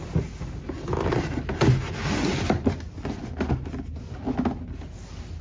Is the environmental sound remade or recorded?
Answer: recorded